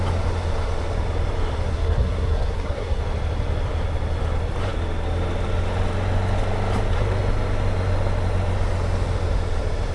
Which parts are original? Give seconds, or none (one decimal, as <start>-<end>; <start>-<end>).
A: 0.0-1.7; 3.0-9.9